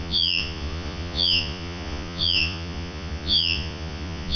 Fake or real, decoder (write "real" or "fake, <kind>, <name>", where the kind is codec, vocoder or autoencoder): fake, vocoder, Vocos